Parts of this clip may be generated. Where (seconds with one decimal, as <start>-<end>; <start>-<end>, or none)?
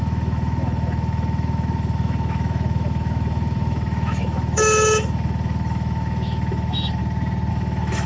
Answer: 0.0-7.0; 7.5-8.1